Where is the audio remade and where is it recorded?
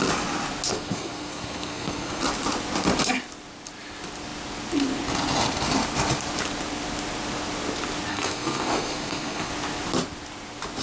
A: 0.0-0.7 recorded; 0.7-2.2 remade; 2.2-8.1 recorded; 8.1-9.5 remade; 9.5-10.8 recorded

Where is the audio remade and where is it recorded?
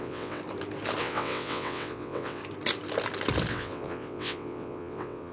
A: 0.0-0.4 remade; 0.4-1.0 recorded; 1.0-2.4 remade; 2.4-3.5 recorded; 3.5-5.3 remade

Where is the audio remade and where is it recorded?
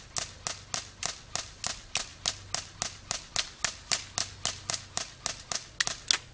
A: 0.0-6.3 recorded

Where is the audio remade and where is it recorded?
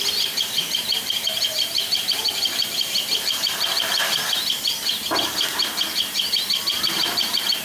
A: 0.0-4.0 remade; 4.0-6.7 recorded; 6.7-7.6 remade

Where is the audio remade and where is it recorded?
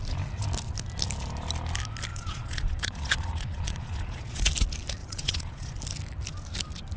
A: 0.0-2.1 recorded; 2.1-4.4 remade; 4.4-5.0 recorded; 5.0-5.8 remade; 5.8-7.0 recorded